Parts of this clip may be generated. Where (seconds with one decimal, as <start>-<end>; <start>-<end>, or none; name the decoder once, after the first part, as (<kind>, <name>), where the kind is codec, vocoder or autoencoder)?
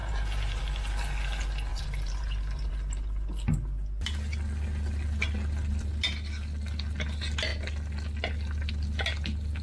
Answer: 0.0-0.6 (vocoder, BigVGAN v2); 1.7-2.7